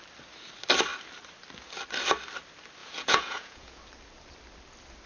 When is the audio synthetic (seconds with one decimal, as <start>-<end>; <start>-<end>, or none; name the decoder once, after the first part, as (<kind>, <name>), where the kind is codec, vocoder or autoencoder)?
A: 2.8-3.8 (vocoder, Vocos)